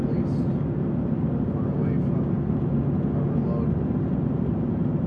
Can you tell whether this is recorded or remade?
recorded